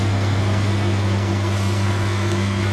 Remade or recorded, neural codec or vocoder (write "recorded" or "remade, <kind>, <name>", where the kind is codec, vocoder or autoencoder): remade, codec, SNAC